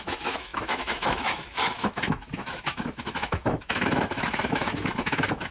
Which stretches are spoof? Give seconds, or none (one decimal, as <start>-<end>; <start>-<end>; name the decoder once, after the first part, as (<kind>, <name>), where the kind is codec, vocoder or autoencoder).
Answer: 0.0-5.5 (autoencoder, DAC-VAE)